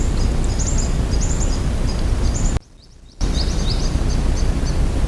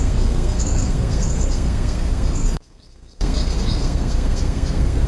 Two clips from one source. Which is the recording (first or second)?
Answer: first